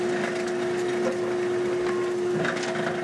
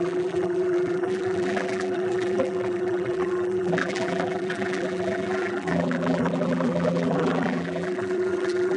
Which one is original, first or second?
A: first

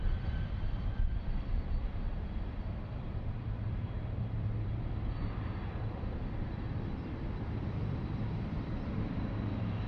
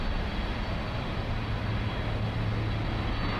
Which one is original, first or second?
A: second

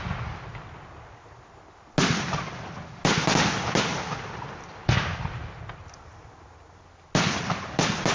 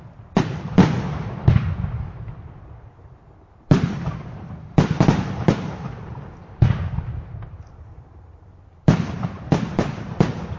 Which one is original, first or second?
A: first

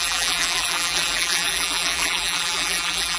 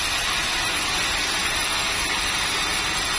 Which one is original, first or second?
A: second